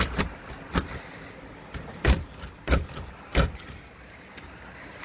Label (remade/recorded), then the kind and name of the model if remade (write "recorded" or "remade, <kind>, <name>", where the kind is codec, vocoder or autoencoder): recorded